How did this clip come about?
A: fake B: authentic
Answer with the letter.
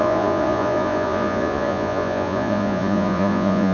A